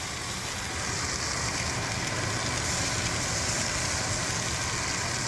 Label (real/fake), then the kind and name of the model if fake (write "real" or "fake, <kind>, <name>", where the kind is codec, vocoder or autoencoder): real